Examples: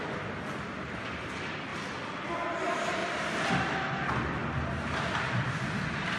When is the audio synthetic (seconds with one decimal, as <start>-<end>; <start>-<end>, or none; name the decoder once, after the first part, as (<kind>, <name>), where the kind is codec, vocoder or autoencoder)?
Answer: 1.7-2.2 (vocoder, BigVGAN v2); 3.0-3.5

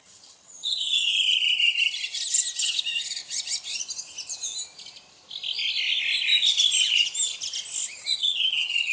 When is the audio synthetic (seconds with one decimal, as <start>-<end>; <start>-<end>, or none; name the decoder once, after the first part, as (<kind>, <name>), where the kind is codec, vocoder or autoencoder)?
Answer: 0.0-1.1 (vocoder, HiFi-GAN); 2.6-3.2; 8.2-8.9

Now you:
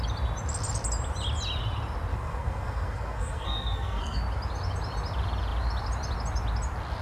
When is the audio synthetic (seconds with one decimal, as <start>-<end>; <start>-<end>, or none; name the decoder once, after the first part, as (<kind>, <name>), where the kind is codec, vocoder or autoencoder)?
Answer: 2.1-4.2 (codec, SNAC)